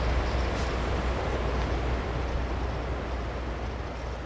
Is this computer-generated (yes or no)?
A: no